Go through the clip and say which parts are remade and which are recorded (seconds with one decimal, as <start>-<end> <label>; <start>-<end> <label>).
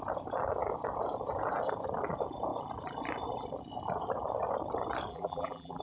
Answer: 0.0-5.1 recorded; 5.1-5.8 remade